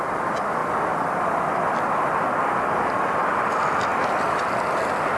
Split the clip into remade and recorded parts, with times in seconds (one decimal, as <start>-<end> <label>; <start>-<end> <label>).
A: 0.0-5.2 recorded